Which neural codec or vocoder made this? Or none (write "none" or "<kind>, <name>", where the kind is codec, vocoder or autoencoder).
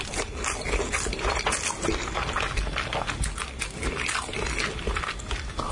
none